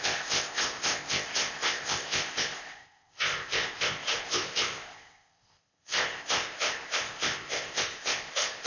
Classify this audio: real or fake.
fake